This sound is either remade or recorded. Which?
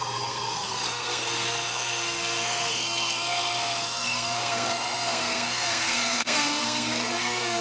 remade